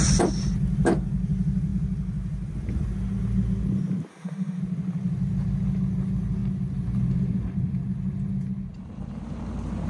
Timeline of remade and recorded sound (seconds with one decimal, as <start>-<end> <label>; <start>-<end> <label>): 0.0-4.1 recorded; 4.1-4.6 remade; 4.6-9.9 recorded